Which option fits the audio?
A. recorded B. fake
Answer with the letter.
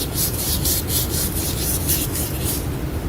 B